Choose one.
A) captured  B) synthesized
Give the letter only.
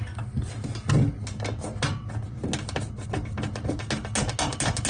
A